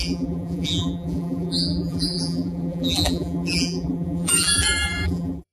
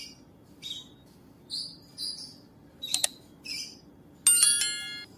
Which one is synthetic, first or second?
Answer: first